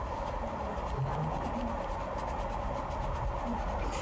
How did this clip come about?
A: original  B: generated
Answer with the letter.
A